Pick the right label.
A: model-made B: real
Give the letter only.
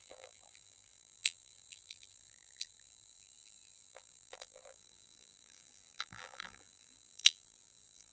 A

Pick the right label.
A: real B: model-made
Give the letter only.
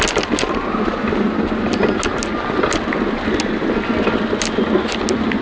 A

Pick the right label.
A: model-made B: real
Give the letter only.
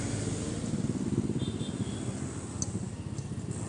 B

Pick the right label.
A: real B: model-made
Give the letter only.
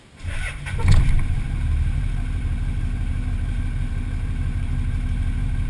B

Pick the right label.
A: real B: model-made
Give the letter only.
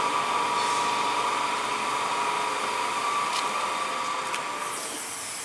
A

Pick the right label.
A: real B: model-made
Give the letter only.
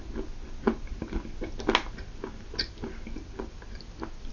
A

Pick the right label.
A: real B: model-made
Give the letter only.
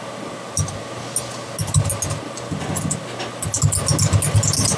A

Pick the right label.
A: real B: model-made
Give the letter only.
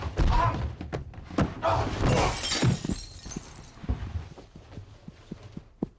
A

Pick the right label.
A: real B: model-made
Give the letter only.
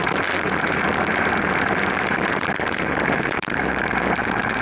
B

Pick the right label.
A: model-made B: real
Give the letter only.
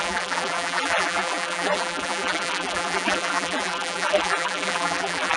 A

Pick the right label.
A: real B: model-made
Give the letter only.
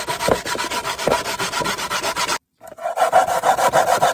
A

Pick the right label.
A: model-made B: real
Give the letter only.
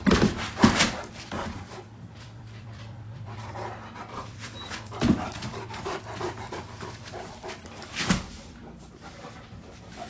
A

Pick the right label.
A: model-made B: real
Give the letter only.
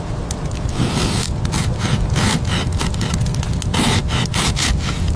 B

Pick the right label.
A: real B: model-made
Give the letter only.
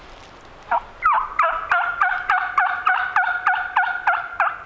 A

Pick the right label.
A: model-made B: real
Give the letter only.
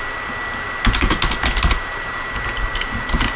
B